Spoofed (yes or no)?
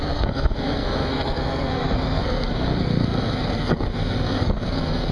yes